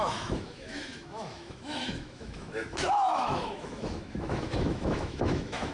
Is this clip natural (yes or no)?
no